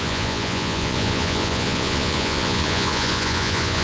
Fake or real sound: fake